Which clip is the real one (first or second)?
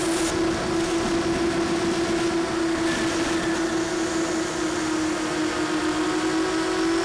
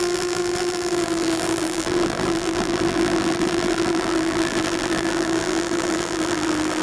first